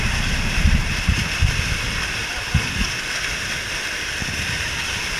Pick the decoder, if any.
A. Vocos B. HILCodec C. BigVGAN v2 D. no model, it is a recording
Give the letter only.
D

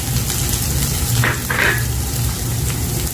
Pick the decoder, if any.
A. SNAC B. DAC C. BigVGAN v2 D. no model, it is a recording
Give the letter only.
D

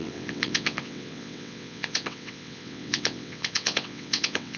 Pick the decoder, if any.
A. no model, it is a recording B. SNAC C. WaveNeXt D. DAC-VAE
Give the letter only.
C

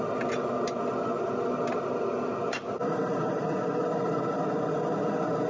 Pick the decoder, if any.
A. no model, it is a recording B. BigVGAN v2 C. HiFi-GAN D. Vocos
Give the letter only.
A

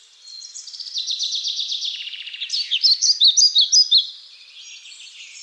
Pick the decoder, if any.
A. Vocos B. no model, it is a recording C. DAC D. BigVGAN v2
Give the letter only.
B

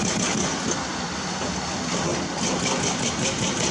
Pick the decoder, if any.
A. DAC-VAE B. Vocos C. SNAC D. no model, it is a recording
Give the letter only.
D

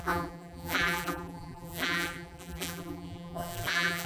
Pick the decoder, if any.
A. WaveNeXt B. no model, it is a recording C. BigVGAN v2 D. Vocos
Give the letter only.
C